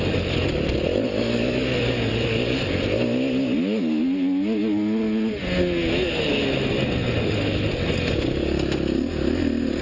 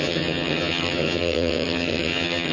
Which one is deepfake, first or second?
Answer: second